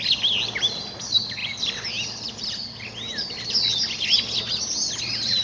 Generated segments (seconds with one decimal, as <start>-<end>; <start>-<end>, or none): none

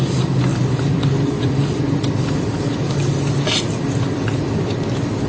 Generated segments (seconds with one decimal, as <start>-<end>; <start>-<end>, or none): none

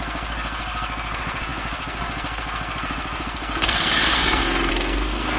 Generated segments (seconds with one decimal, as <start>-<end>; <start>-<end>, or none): 0.0-5.4

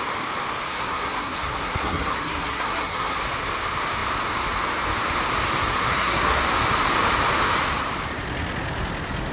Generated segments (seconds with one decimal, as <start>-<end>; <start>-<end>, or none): 0.7-3.2; 5.7-6.4

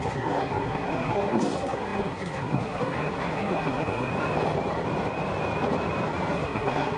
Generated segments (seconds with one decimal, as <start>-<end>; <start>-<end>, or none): 0.0-4.1; 6.3-7.0